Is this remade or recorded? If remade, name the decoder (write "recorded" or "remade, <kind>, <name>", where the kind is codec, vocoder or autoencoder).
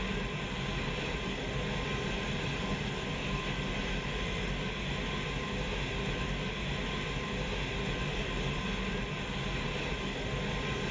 recorded